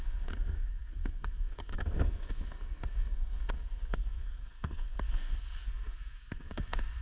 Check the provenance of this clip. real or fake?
fake